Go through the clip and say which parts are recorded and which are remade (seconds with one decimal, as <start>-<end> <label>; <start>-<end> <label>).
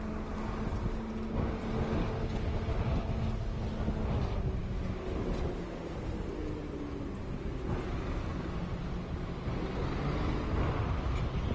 0.0-11.5 recorded